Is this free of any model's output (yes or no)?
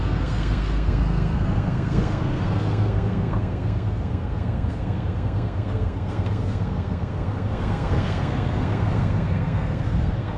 no